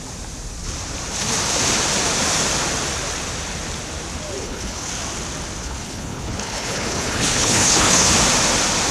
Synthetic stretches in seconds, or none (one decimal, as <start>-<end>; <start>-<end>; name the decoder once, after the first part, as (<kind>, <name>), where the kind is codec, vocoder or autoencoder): 4.4-4.9 (codec, HILCodec); 5.6-8.1